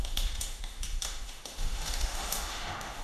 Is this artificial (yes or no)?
yes